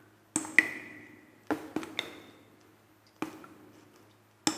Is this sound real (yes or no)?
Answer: yes